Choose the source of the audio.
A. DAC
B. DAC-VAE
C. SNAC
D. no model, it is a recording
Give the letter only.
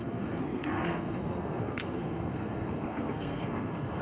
C